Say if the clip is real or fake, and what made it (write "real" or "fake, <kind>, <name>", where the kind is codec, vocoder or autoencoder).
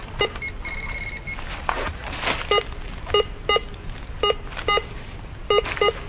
real